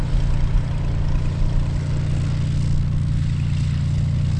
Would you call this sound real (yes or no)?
yes